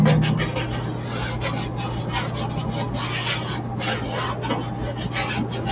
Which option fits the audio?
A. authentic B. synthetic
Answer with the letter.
A